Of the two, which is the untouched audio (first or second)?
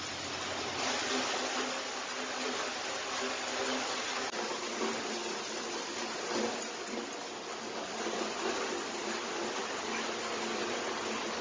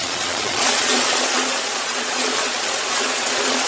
first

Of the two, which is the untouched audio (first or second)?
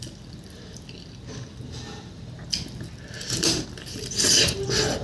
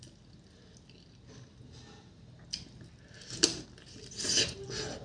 second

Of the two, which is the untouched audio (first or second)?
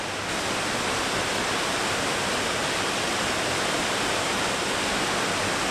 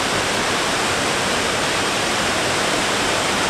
first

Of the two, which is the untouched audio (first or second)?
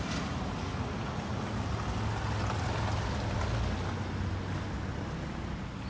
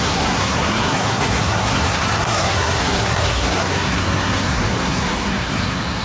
first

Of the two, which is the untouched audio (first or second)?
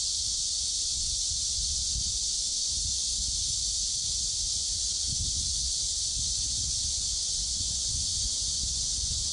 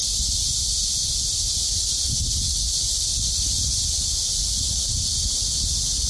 second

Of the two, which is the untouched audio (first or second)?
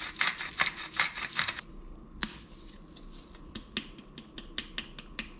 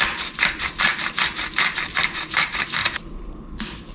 first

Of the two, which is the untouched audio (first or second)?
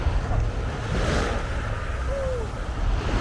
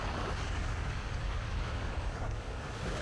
first